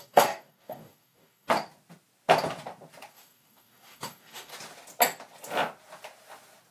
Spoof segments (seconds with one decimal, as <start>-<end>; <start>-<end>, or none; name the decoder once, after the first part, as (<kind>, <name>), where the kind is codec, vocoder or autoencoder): 0.0-1.5 (codec, DAC); 3.1-4.5